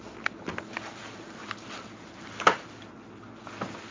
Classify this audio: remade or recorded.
recorded